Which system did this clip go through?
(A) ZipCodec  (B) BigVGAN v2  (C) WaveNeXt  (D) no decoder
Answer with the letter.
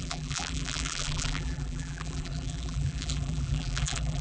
B